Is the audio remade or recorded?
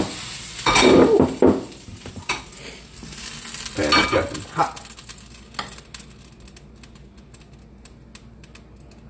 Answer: recorded